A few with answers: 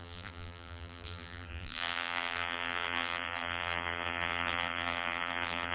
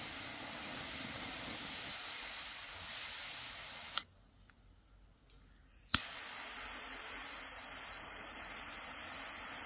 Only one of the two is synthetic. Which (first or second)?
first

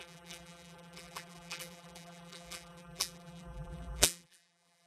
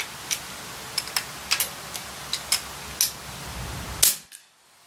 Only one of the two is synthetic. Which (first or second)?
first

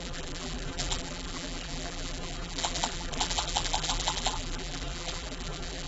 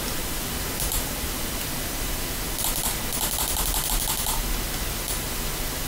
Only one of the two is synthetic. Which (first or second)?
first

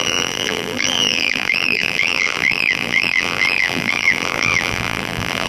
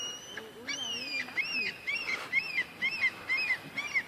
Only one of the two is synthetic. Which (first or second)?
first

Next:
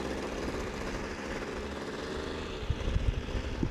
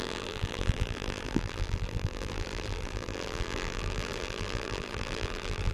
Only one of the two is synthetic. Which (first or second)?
second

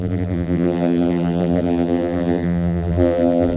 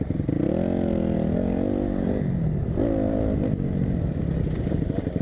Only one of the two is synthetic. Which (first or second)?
first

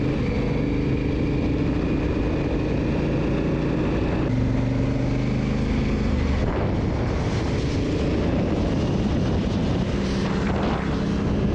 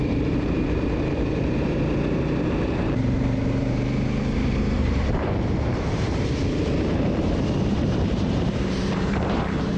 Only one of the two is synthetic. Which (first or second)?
second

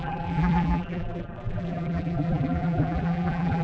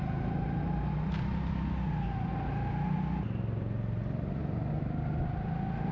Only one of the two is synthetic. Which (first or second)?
first